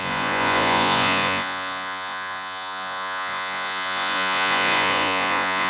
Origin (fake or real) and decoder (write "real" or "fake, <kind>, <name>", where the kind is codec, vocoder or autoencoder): fake, vocoder, Vocos